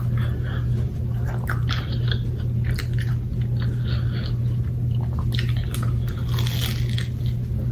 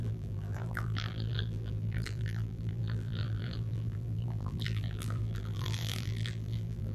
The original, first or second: first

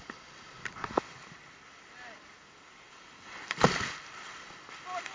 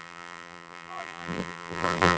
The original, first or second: first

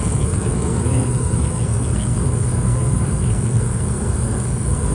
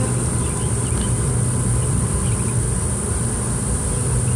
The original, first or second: second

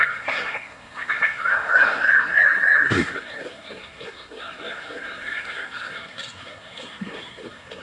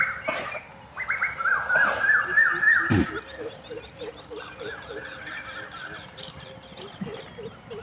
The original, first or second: second